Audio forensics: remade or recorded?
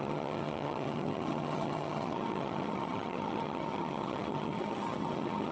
remade